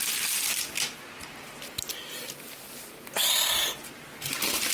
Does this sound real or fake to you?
real